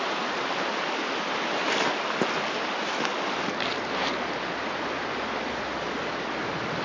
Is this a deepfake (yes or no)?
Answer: no